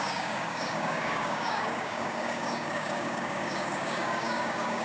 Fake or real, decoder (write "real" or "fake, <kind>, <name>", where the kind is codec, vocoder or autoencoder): fake, codec, DAC